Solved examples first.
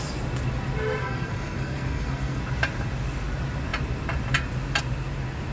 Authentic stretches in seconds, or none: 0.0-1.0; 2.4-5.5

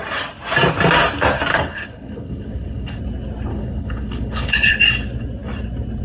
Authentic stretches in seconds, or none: 0.0-1.5; 3.0-3.5; 4.8-6.0

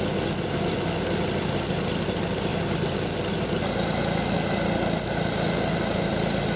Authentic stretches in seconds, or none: 0.0-6.6

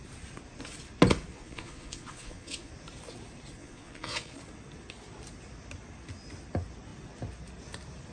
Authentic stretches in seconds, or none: 0.0-1.3; 2.7-3.6; 4.4-8.1

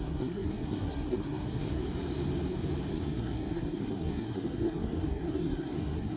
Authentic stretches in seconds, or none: 1.8-2.9

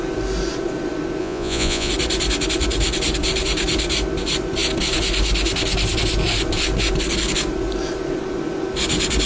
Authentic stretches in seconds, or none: 0.0-1.2; 1.9-9.3

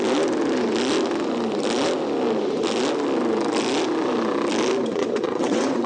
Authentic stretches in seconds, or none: 0.0-4.9

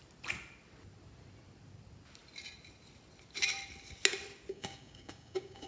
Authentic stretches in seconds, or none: 0.0-4.5